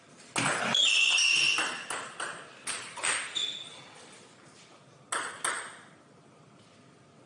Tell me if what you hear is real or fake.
real